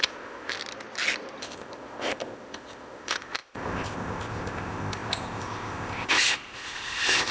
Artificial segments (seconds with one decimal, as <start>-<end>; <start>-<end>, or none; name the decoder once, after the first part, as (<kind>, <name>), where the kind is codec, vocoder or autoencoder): 0.0-0.6 (codec, ZipCodec); 1.4-7.3